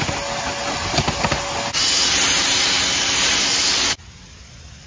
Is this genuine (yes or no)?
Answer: yes